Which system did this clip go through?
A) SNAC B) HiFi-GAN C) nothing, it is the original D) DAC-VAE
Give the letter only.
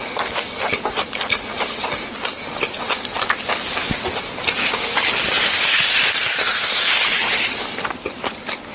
C